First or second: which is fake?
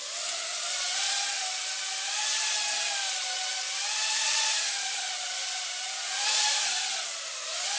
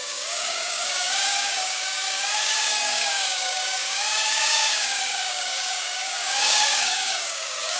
second